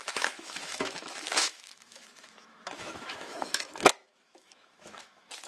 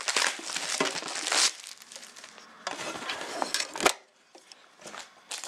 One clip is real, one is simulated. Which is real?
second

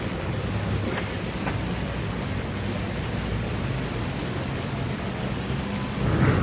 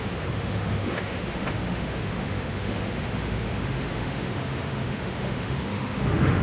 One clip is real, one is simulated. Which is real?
first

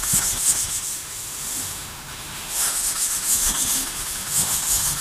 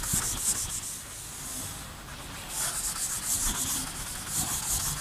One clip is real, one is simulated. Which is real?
second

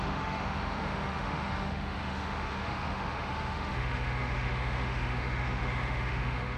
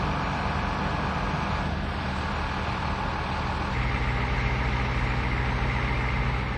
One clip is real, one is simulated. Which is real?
second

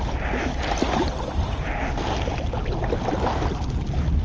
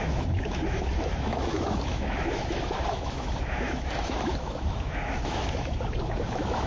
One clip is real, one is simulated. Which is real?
first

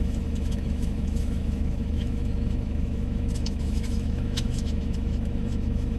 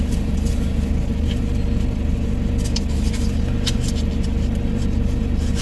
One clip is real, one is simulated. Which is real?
second